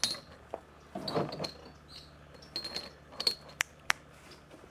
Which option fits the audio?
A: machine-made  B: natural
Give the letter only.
B